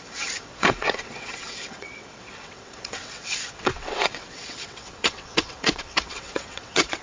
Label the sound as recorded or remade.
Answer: remade